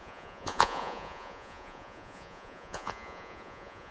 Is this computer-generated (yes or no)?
yes